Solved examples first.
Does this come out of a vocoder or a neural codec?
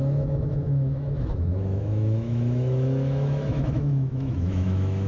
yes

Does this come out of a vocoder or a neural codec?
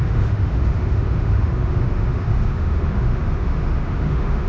yes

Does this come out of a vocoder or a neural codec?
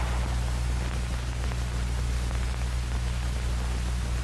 no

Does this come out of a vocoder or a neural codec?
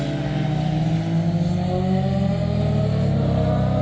no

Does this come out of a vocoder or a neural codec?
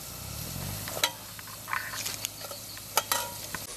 no